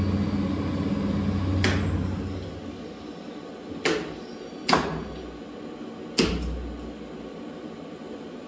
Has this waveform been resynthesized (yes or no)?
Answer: no